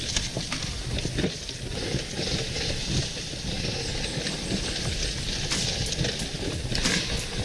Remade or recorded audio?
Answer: recorded